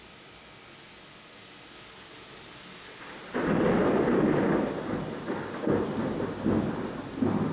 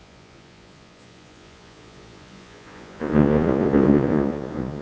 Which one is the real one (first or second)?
first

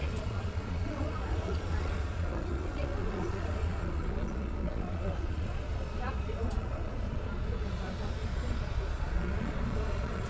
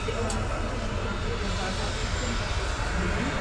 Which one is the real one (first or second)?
second